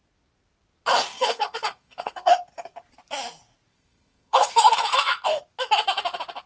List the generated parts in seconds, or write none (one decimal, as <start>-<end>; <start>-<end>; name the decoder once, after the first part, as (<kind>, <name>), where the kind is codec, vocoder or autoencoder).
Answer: 1.1-2.3 (codec, SNAC); 3.7-5.4

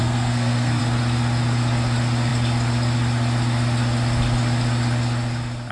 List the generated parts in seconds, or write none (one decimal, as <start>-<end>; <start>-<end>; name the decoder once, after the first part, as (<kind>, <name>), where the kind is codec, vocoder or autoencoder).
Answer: 0.0-0.8 (codec, SNAC)